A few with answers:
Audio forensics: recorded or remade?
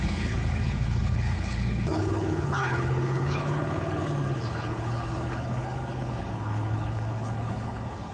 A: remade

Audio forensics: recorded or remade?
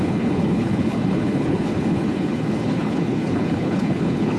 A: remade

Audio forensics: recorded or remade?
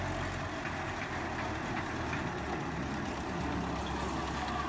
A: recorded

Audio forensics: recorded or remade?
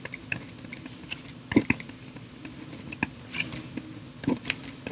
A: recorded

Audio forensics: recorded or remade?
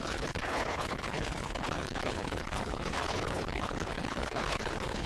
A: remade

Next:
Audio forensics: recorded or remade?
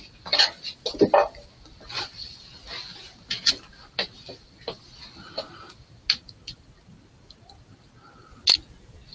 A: recorded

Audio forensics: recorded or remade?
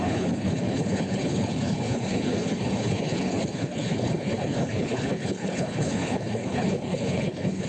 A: remade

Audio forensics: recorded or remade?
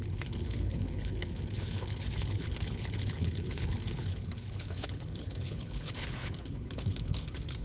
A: remade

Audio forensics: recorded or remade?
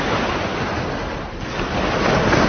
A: recorded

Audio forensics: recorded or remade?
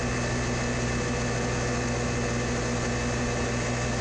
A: recorded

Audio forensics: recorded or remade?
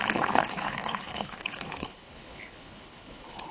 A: remade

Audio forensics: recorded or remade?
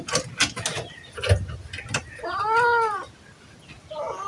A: recorded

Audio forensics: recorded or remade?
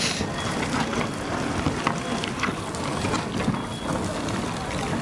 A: recorded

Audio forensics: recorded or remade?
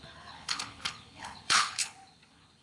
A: remade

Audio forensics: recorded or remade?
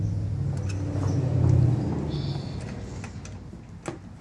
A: recorded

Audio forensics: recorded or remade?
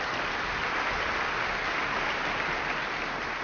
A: recorded